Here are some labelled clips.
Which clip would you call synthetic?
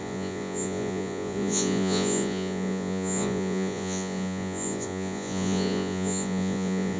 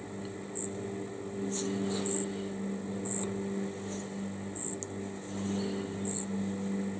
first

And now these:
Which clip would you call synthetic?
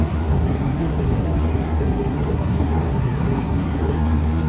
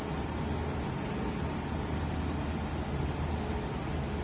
first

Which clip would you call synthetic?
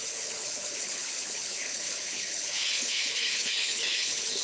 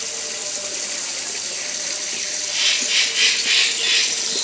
first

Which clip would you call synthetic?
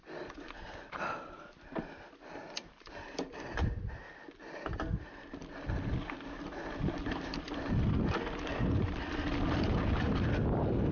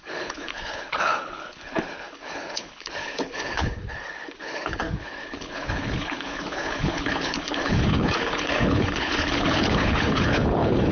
second